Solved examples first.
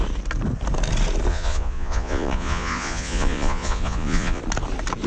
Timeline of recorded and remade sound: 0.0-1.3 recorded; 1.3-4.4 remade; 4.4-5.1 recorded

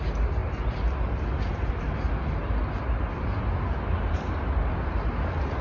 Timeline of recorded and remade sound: 0.0-5.6 recorded

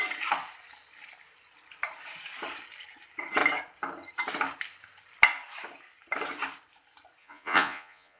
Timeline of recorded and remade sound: 0.0-7.2 recorded; 7.2-8.2 remade

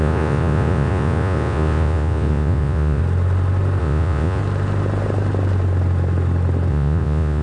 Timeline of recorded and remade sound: 0.0-3.0 remade; 3.0-3.8 recorded; 3.8-4.4 remade; 4.4-6.7 recorded; 6.7-7.4 remade

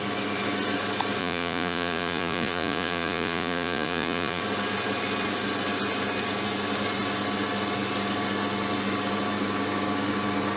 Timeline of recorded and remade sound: 0.0-1.2 recorded; 1.2-4.4 remade; 4.4-10.6 recorded

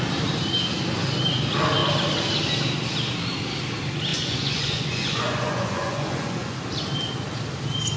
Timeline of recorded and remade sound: 0.0-4.1 recorded; 4.1-6.6 remade; 6.6-8.0 recorded

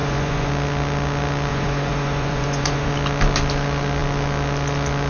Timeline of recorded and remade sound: 0.0-0.5 remade; 0.5-1.5 recorded; 1.5-2.9 remade; 2.9-5.1 recorded